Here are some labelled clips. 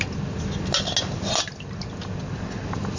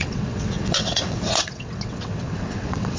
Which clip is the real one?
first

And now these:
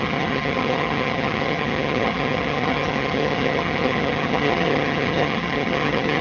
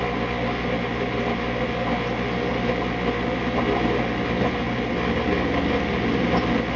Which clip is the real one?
second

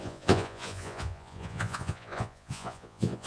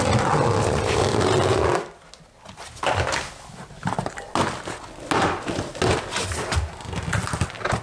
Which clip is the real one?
second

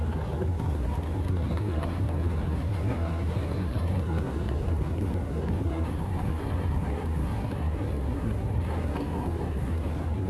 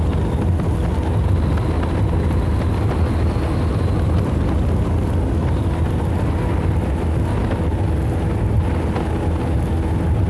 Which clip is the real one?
second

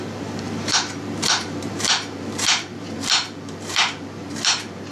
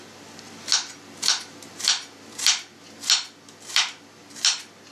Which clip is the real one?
second